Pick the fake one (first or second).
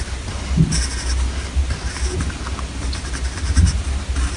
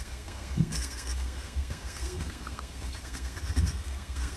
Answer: second